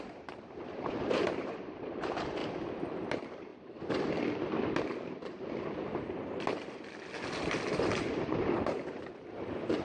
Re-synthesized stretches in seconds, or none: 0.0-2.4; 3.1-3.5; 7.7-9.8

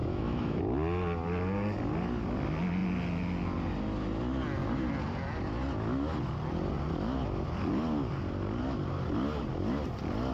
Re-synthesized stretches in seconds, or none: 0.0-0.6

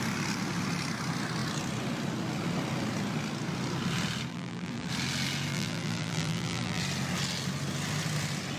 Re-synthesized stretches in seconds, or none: 4.3-4.9; 5.5-6.8

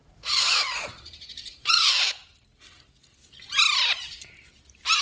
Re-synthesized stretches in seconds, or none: 0.0-1.9

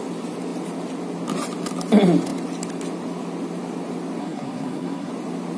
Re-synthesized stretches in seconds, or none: 4.2-5.1